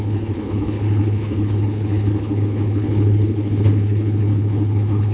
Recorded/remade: remade